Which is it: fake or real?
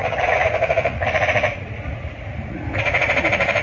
fake